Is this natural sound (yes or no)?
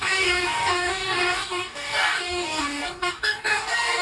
no